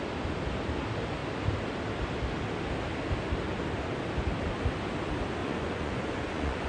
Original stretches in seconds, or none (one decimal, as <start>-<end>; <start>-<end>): 0.0-5.4